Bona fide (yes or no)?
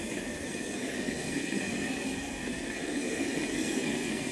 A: no